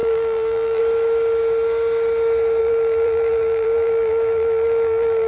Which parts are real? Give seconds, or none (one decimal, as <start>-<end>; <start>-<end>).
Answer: 0.8-2.6